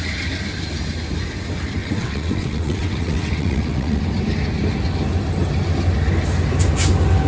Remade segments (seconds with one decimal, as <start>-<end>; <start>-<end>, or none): 1.8-4.0